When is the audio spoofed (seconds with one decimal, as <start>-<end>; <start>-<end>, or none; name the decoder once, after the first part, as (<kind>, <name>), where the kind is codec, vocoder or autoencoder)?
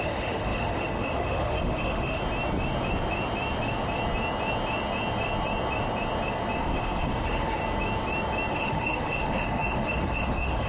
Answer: 0.0-2.2 (autoencoder, DAC-VAE); 6.6-7.6; 8.5-10.7